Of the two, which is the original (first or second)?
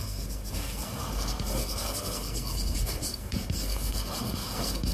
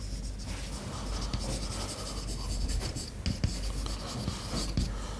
second